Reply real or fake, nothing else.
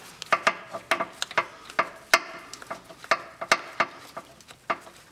real